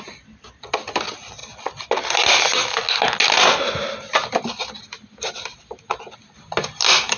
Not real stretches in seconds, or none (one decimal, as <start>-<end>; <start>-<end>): none